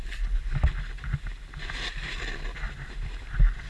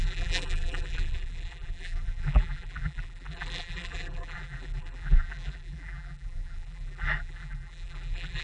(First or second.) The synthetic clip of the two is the second